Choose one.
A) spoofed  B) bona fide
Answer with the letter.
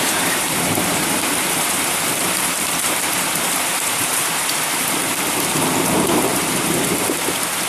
A